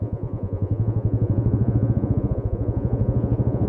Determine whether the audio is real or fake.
fake